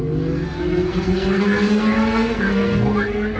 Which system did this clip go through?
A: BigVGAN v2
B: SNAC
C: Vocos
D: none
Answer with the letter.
B